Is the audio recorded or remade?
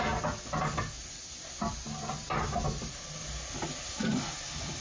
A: recorded